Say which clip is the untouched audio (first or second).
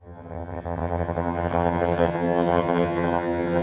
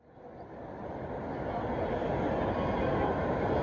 second